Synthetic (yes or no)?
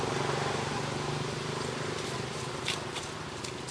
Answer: no